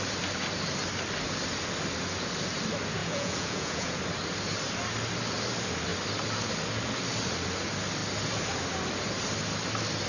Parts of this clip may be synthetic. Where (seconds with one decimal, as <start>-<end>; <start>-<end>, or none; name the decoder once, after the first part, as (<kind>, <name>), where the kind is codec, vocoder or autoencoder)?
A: 3.0-4.0 (vocoder, Vocos)